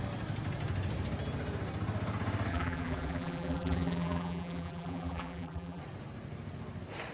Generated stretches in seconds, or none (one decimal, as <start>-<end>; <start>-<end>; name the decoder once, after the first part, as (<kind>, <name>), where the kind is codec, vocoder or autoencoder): 2.5-5.8 (vocoder, BigVGAN v2)